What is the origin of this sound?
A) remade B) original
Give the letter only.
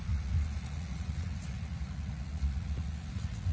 A